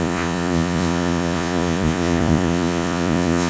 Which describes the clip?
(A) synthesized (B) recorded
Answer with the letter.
A